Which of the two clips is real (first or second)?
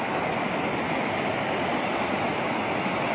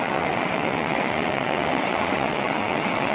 first